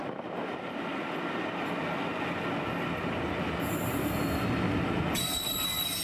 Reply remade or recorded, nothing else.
recorded